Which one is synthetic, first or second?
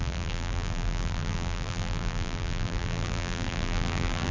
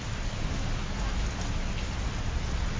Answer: first